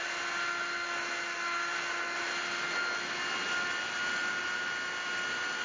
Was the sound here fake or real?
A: real